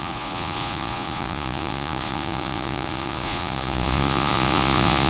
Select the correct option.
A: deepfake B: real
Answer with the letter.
A